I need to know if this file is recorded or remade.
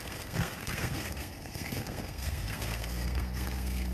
remade